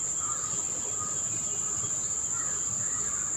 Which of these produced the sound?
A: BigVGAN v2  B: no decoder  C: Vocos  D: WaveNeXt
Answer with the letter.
B